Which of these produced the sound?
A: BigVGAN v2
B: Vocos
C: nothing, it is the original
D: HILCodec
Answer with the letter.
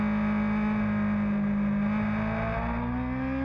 C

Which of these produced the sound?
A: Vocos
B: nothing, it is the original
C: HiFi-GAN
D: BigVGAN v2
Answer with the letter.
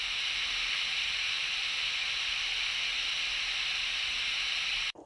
D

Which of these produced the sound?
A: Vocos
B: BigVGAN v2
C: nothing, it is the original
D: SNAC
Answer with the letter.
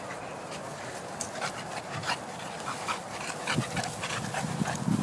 C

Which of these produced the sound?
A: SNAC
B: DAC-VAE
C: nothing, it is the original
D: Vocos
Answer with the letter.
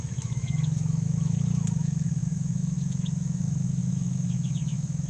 B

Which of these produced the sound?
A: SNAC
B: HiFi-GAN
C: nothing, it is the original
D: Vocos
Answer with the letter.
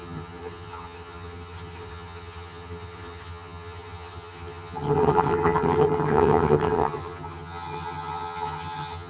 B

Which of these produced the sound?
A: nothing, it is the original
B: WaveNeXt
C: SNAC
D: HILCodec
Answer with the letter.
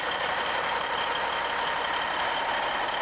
A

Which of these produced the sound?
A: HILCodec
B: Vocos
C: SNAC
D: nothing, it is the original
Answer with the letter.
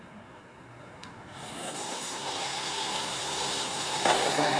C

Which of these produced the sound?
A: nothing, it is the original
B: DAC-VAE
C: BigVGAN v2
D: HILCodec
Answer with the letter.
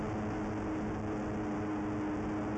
A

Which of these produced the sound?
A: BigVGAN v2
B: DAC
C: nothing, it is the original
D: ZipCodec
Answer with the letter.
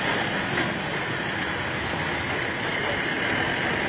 C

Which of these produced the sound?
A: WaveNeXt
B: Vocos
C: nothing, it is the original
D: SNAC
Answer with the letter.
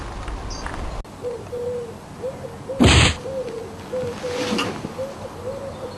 C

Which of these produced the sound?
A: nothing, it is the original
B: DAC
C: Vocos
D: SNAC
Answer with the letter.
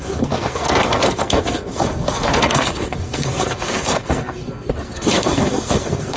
D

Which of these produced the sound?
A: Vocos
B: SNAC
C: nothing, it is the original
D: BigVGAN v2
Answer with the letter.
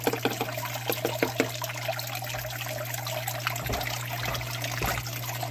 C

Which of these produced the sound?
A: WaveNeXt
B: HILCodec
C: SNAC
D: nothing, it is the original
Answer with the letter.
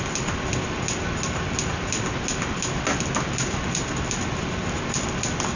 D